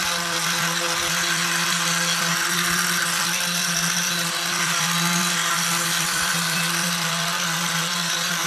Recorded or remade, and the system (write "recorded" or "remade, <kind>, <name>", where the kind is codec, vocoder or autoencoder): remade, vocoder, BigVGAN v2